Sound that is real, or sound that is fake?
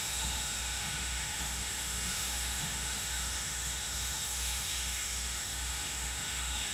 fake